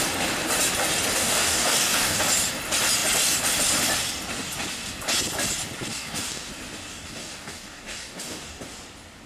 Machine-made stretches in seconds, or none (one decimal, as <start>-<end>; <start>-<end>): 1.2-2.2; 5.9-6.5; 6.9-8.6